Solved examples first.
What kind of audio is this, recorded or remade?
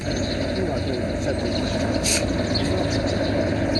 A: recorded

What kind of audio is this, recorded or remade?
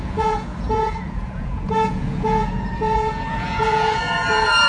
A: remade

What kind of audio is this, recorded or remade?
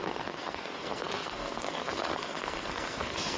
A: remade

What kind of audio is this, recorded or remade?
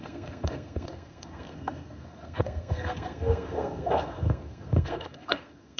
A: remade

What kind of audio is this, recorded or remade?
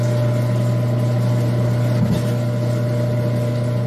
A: recorded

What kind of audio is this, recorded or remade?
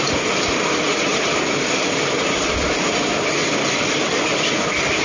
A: recorded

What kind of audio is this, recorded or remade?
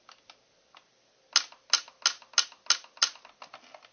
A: recorded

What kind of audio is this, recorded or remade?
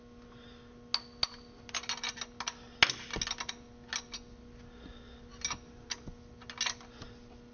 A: recorded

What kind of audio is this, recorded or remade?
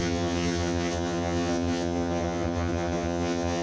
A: remade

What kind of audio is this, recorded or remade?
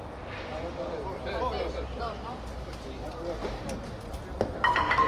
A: recorded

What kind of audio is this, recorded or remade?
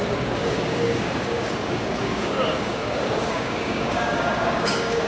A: remade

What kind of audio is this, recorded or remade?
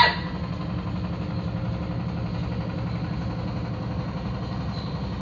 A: recorded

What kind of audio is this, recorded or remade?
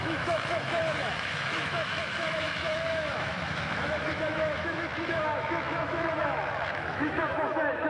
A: remade